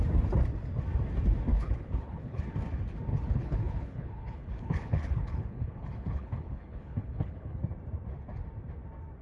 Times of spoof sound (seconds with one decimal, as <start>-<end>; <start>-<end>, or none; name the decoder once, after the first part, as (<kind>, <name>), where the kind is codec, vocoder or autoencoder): 1.5-2.4 (codec, HILCodec); 3.1-7.6

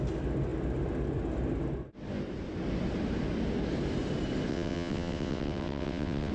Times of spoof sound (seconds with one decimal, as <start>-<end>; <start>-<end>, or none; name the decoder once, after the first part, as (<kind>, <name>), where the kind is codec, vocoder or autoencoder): 4.5-6.3 (vocoder, WaveNeXt)

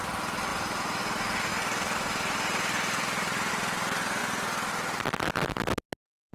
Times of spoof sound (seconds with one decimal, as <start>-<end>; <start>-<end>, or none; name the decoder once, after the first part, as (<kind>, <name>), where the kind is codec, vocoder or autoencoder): 0.5-1.0 (vocoder, BigVGAN v2); 1.5-3.5

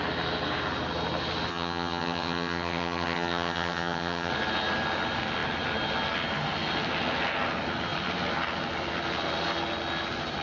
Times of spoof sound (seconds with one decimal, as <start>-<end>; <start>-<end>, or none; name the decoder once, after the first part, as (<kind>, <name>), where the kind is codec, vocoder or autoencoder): 1.5-4.3 (vocoder, HiFi-GAN)

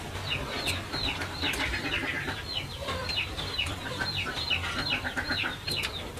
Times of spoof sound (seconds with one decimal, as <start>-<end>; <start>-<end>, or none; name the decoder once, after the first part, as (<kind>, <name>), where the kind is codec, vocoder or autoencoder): 2.1-5.8 (vocoder, BigVGAN v2)